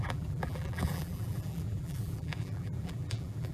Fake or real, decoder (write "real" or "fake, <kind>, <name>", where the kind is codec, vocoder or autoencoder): fake, vocoder, BigVGAN v2